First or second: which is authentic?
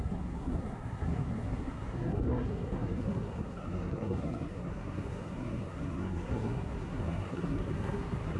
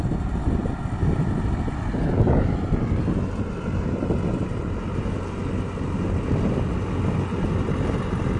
second